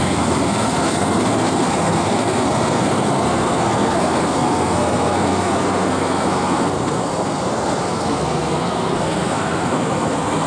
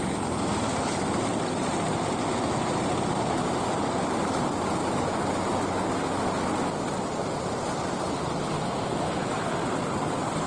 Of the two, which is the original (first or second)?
second